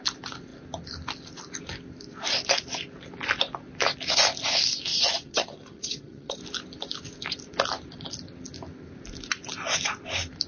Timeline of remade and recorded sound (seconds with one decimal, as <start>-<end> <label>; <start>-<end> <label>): 0.0-4.9 recorded; 4.9-6.4 remade; 6.4-10.5 recorded

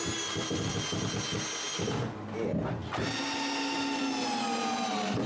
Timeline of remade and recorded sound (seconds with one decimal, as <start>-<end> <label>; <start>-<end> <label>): 0.0-5.3 recorded

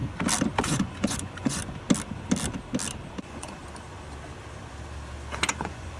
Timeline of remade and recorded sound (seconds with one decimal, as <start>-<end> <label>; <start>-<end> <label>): 0.0-0.6 recorded; 0.6-1.6 remade; 1.6-3.2 recorded; 3.2-3.6 remade; 3.6-5.5 recorded; 5.5-6.0 remade